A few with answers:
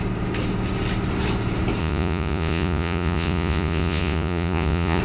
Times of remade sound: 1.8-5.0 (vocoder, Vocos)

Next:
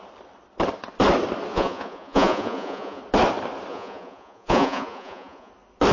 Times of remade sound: 1.5-3.0 (vocoder, Vocos); 3.7-5.5

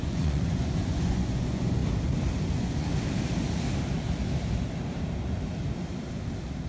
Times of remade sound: 0.0-1.8 (vocoder, Vocos); 2.5-2.9

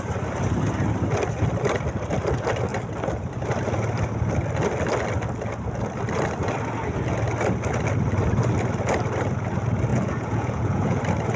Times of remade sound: 9.9-11.0 (vocoder, Vocos)

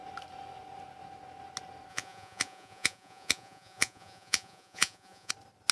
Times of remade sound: 1.9-5.3 (vocoder, Vocos)